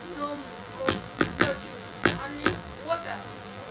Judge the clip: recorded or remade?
remade